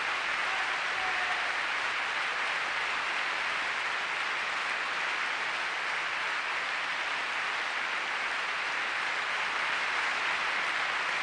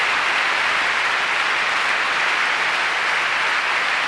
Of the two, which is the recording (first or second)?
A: first